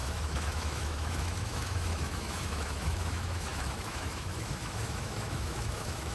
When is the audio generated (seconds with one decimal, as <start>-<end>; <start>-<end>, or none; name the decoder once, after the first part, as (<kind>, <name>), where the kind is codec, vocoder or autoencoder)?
0.0-6.1 (autoencoder, DAC-VAE)